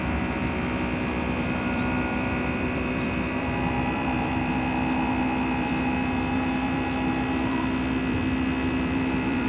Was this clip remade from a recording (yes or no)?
yes